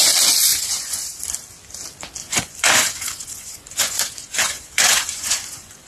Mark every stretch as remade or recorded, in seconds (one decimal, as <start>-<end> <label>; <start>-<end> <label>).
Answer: 0.0-0.5 recorded; 0.5-1.2 remade; 1.2-2.2 recorded; 2.2-5.9 remade